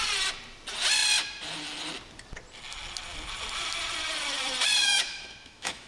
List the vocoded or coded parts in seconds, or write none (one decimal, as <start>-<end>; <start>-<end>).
4.8-5.9